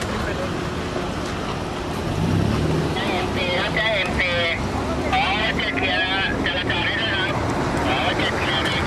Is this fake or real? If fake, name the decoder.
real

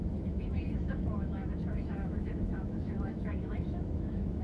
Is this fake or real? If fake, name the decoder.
fake, autoencoder, DAC-VAE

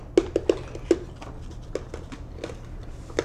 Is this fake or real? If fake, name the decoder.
real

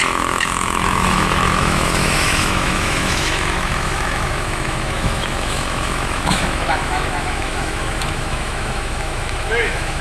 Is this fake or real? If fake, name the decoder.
fake, autoencoder, DAC-VAE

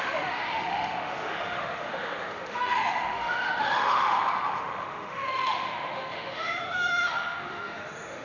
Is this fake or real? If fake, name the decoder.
fake, autoencoder, DAC-VAE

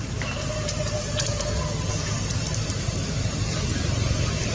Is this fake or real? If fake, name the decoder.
real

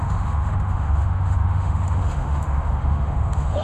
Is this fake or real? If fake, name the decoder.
fake, autoencoder, DAC-VAE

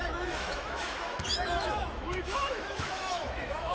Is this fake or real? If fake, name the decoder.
fake, autoencoder, DAC-VAE